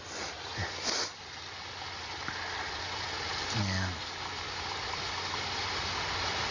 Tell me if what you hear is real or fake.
real